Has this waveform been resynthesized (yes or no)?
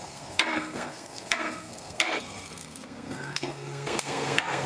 yes